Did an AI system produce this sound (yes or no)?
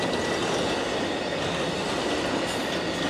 no